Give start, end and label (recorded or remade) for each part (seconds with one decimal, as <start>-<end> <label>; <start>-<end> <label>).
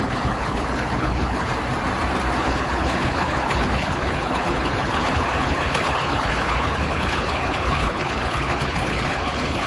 0.0-1.5 remade; 1.5-2.4 recorded; 2.4-9.7 remade